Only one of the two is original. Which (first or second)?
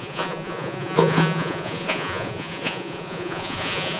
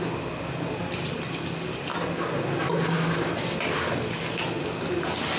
second